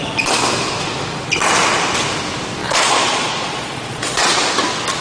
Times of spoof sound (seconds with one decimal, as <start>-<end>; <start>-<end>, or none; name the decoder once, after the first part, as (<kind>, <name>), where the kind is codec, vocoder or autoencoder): 2.6-4.5 (vocoder, Vocos)